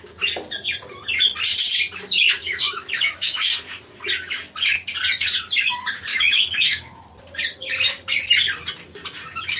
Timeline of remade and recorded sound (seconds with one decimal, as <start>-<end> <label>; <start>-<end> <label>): 0.0-2.4 recorded; 2.4-3.4 remade; 3.4-6.1 recorded; 6.1-7.1 remade; 7.1-9.6 recorded

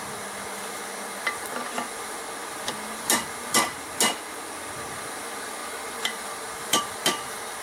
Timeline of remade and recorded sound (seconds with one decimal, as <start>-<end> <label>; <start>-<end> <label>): 0.0-7.6 recorded

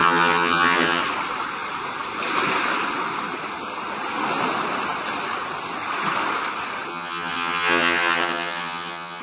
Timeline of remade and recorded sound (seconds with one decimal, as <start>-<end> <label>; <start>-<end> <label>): 0.0-1.0 remade; 1.0-6.9 recorded; 6.9-9.2 remade

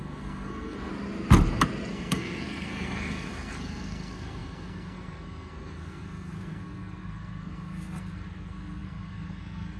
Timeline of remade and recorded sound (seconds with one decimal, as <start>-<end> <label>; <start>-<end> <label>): 0.0-0.9 remade; 0.9-1.9 recorded; 1.9-9.8 remade

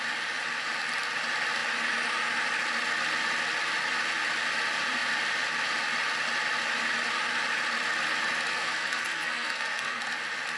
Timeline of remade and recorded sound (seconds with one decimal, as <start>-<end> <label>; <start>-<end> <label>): 0.0-8.5 recorded; 8.5-10.0 remade; 10.0-10.6 recorded

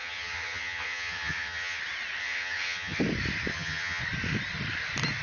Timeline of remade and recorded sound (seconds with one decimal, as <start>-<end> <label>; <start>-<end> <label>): 0.0-1.8 remade; 1.8-2.2 recorded; 2.2-3.0 remade; 3.0-3.5 recorded; 3.5-4.0 remade; 4.0-5.2 recorded

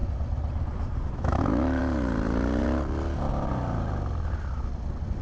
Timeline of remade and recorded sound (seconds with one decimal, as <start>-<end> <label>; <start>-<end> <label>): 0.0-1.1 recorded; 1.1-1.8 remade; 1.8-5.2 recorded

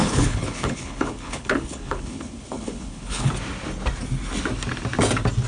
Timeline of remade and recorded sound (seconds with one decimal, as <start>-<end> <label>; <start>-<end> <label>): 0.0-3.3 remade; 3.3-5.5 recorded